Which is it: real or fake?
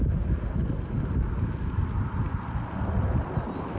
real